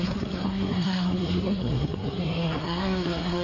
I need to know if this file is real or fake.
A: fake